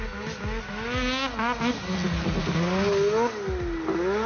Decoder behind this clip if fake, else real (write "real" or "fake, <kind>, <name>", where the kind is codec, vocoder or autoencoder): real